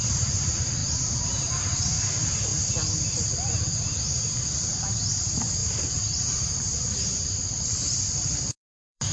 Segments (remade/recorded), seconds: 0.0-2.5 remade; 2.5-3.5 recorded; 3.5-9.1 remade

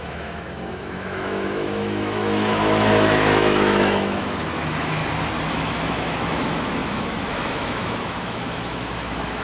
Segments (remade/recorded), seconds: 0.0-5.0 remade; 5.0-5.5 recorded; 5.5-9.4 remade

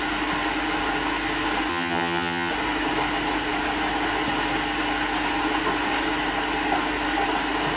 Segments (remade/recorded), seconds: 0.0-1.7 recorded; 1.7-2.5 remade; 2.5-7.8 recorded

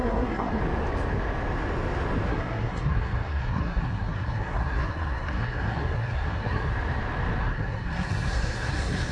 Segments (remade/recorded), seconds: 0.0-0.6 remade; 0.6-2.3 recorded; 2.3-6.7 remade; 6.7-7.4 recorded; 7.4-9.1 remade

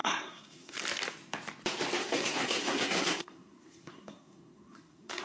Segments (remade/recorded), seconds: 0.0-0.8 remade; 0.8-2.0 recorded; 2.0-5.2 remade

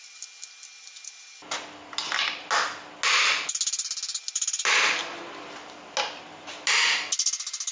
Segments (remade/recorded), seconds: 0.0-7.7 recorded